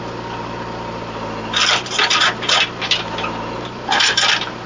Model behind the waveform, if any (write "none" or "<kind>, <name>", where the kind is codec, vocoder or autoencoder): none